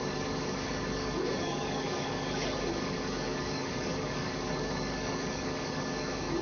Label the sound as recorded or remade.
remade